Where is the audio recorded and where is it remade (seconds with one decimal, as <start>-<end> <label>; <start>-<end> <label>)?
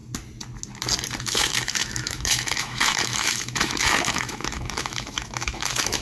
0.0-1.2 recorded; 1.2-6.0 remade